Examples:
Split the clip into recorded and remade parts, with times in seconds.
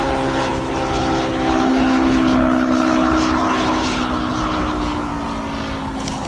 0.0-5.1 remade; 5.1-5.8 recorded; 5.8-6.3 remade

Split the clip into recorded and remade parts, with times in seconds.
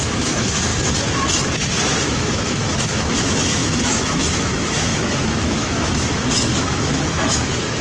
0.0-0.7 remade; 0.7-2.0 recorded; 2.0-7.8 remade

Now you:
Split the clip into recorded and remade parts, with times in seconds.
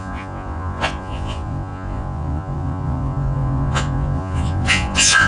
0.0-5.3 remade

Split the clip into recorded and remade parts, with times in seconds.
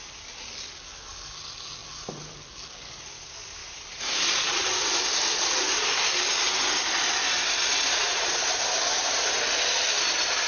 0.0-3.6 recorded; 3.6-5.0 remade; 5.0-7.2 recorded; 7.2-8.6 remade; 8.6-10.5 recorded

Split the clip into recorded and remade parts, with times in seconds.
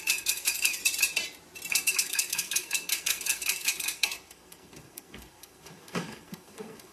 0.0-0.8 remade; 0.8-1.7 recorded; 1.7-6.9 remade